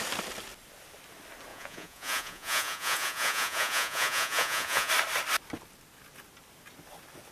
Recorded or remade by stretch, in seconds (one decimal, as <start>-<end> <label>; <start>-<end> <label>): 0.0-1.5 recorded; 1.5-4.9 remade; 4.9-7.3 recorded